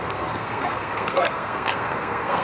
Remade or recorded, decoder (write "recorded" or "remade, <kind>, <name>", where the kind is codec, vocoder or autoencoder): remade, codec, SNAC